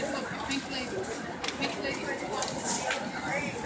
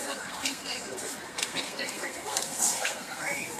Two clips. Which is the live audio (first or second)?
first